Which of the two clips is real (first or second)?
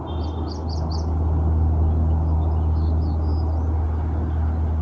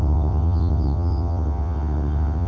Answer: first